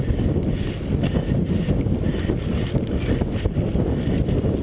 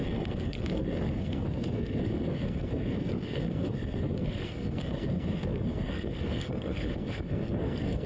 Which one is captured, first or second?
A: first